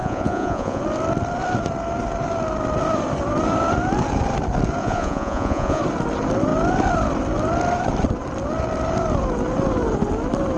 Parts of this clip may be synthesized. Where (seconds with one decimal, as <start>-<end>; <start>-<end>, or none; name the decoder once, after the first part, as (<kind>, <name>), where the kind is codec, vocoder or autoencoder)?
0.0-0.8 (vocoder, Vocos); 4.8-5.8